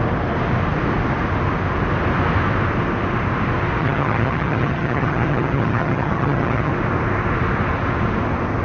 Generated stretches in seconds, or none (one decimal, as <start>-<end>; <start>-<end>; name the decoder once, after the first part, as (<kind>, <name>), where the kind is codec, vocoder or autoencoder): 3.8-6.7 (vocoder, HiFi-GAN)